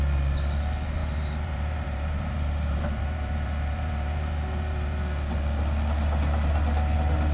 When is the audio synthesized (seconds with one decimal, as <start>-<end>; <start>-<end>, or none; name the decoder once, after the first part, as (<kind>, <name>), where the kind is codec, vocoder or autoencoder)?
1.0-5.0 (vocoder, BigVGAN v2)